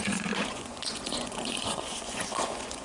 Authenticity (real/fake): fake